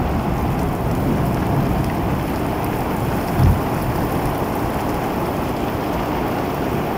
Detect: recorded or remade recorded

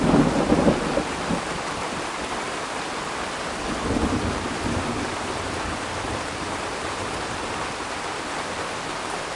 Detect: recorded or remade remade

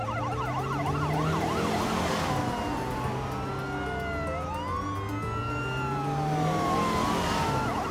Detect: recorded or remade recorded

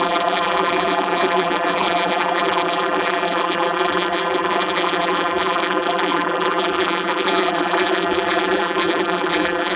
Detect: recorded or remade remade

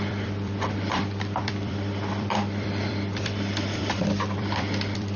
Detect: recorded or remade remade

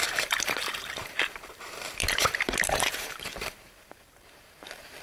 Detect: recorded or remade remade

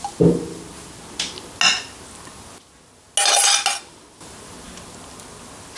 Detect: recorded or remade recorded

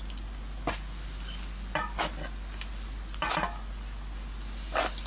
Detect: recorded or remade recorded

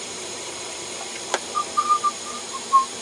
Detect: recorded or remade remade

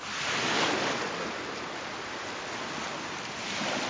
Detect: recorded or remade recorded